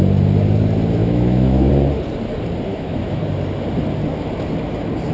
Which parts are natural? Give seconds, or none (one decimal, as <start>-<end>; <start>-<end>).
0.0-1.0; 1.7-2.7; 3.2-5.1